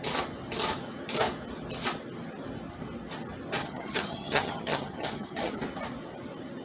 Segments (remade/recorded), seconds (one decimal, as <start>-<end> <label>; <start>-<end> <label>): 0.0-3.6 recorded; 3.6-5.6 remade; 5.6-6.6 recorded